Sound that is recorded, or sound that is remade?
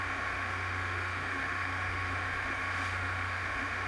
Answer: remade